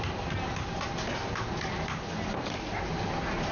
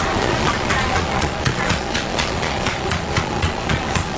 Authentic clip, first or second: first